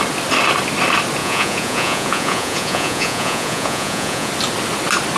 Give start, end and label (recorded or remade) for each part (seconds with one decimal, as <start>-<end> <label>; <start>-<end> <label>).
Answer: 0.0-1.2 recorded; 1.2-4.3 remade; 4.3-5.2 recorded